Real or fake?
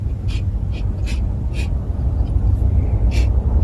real